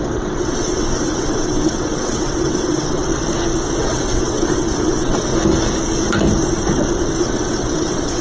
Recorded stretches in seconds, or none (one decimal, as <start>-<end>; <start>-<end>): 3.0-3.8; 5.3-7.2